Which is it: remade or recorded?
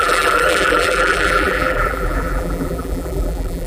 remade